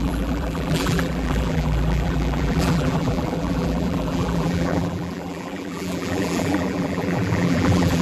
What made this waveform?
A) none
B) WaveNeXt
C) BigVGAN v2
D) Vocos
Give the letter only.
C